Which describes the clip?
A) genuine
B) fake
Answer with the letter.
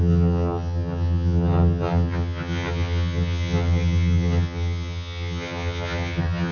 B